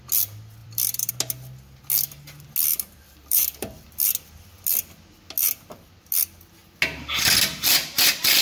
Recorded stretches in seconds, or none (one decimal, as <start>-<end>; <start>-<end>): 0.0-0.6; 1.1-2.7; 4.0-8.4